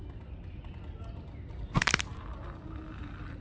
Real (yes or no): yes